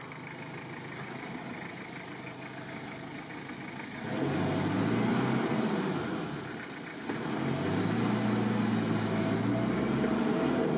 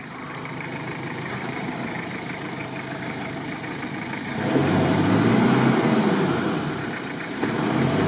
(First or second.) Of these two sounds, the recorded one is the first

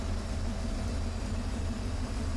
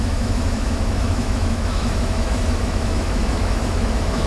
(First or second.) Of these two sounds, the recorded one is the first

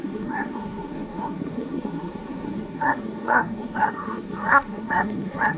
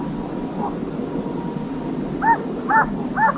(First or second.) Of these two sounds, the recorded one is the second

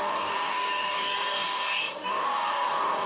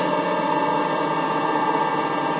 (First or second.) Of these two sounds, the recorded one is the second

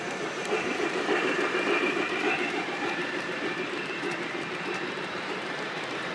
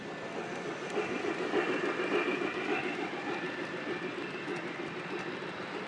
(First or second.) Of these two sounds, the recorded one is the second